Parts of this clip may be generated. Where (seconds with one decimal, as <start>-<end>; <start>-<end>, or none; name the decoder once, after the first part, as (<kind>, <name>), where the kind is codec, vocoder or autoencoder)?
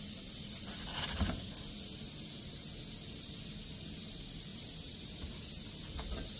4.5-5.5 (vocoder, BigVGAN v2)